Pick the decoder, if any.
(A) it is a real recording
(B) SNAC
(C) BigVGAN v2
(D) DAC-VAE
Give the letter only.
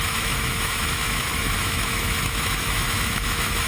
D